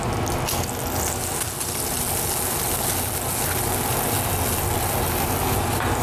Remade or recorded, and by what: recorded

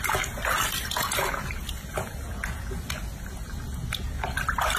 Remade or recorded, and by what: recorded